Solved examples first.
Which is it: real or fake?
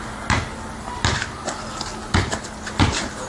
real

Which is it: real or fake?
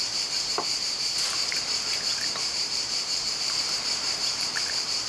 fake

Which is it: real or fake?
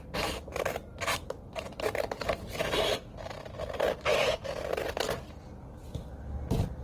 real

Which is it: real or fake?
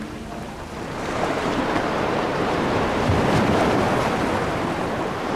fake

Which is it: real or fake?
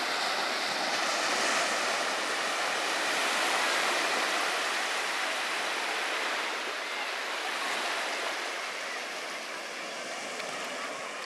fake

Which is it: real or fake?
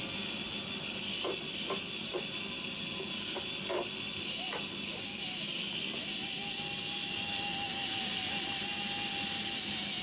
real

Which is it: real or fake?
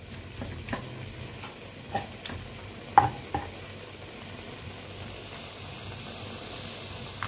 real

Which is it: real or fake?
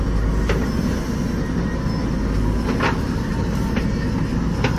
real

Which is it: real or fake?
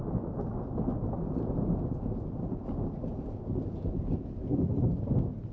real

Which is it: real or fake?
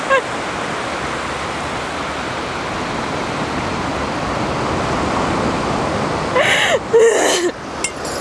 real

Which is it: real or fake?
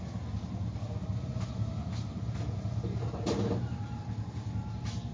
real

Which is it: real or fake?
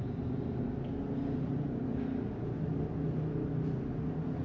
real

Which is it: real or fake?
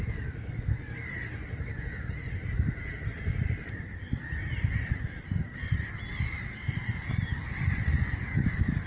real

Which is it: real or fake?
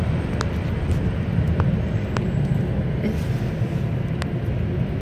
real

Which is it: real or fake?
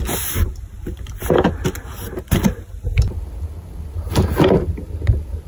real